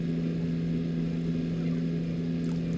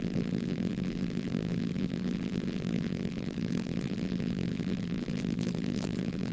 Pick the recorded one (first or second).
first